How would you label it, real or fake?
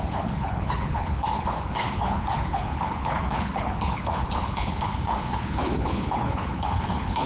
fake